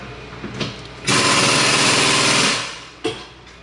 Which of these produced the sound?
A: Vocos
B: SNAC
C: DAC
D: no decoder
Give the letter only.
D